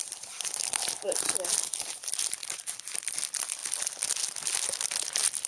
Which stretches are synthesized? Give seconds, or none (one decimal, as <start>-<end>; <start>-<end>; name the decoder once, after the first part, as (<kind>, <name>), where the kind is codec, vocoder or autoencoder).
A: none